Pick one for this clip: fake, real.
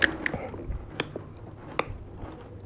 real